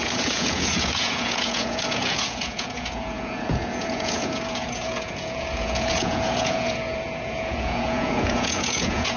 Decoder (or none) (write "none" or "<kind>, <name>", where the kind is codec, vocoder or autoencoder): vocoder, Vocos